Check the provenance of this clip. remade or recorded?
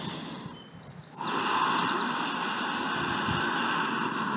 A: recorded